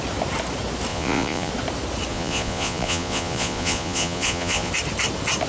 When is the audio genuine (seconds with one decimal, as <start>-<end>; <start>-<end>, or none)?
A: 0.0-0.9; 1.5-2.1; 4.7-5.5